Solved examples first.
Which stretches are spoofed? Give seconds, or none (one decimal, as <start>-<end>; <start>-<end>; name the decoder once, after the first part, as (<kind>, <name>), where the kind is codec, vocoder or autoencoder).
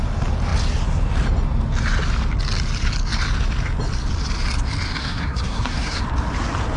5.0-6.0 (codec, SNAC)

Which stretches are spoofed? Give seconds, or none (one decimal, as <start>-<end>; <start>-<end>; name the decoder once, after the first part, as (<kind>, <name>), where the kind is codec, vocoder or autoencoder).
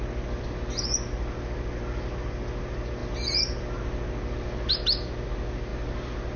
none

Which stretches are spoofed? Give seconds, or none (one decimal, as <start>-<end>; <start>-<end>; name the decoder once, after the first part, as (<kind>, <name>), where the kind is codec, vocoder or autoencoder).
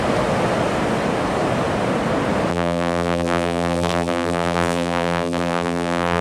2.5-6.2 (vocoder, BigVGAN v2)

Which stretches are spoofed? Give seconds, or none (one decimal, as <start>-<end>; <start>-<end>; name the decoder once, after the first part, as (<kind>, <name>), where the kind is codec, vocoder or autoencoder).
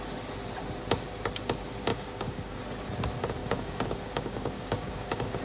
1.9-2.6 (codec, DAC); 3.4-5.4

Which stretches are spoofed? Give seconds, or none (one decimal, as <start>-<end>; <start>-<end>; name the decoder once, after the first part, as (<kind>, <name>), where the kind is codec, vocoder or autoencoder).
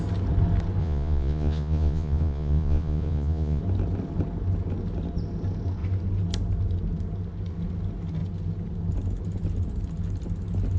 0.8-3.6 (vocoder, Vocos)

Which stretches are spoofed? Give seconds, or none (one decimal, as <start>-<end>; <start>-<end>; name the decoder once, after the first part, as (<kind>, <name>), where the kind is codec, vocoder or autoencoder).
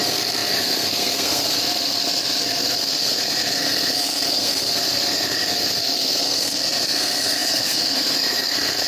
0.0-8.9 (codec, SNAC)